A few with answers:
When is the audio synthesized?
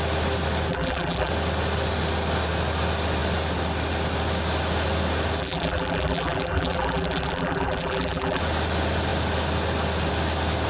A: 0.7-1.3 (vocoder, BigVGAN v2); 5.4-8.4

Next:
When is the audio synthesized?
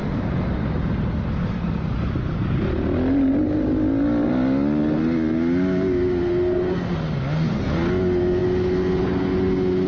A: none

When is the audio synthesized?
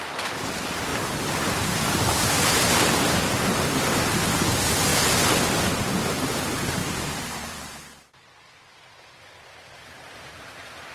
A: 0.9-4.2 (vocoder, BigVGAN v2); 6.8-7.8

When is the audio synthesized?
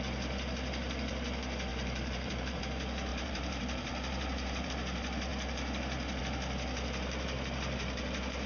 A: 1.7-2.6 (vocoder, BigVGAN v2); 3.1-4.7